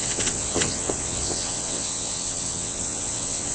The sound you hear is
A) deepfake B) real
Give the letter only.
A